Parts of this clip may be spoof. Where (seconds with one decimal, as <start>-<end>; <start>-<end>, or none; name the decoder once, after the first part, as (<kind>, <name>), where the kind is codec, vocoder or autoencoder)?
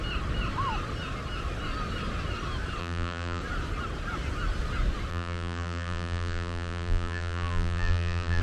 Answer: 2.8-3.4 (vocoder, BigVGAN v2); 5.1-8.4